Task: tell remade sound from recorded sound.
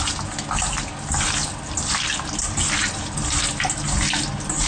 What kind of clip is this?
recorded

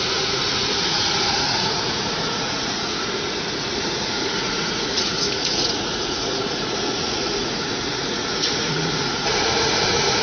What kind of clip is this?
remade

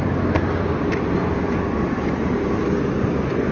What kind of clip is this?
recorded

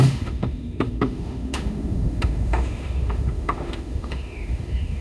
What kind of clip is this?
remade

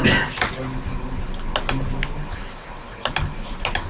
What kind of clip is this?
recorded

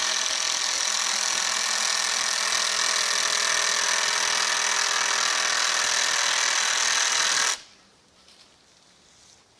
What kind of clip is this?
recorded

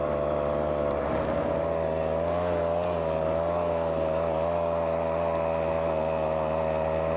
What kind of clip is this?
recorded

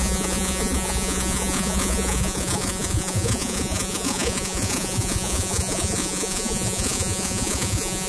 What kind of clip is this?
remade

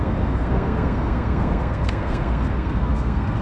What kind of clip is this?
remade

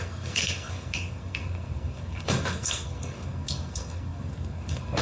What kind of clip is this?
remade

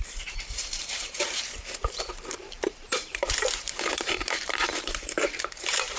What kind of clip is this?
remade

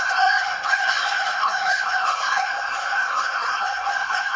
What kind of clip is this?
remade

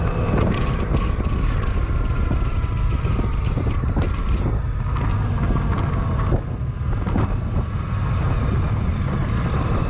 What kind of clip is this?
recorded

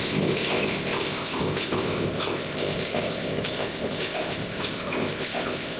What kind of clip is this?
remade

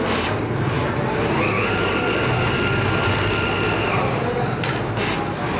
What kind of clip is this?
recorded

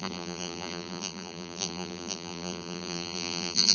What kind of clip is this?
remade